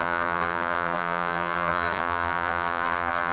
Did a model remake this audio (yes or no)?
yes